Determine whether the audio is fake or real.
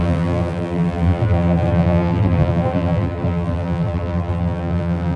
fake